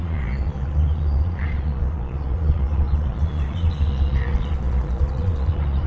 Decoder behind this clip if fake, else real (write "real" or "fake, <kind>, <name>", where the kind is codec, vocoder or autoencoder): fake, vocoder, Vocos